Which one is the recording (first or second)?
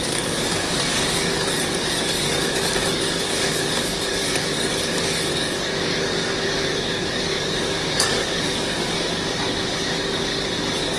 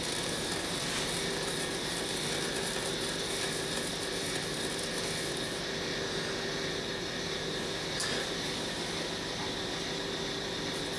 second